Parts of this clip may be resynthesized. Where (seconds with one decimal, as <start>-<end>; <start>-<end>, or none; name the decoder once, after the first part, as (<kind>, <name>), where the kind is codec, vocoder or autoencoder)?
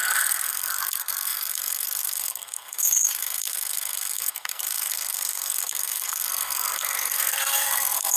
0.0-8.2 (codec, SNAC)